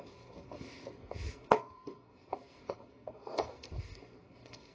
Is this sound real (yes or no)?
no